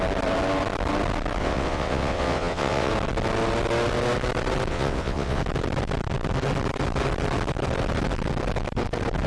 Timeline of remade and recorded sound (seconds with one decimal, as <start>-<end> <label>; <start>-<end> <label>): 0.0-1.4 recorded; 1.4-2.9 remade; 2.9-4.7 recorded; 4.7-5.4 remade; 5.4-9.3 recorded